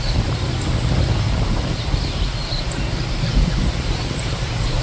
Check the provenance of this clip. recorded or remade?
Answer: remade